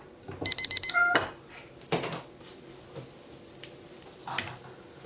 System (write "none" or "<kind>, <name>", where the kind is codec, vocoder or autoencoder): none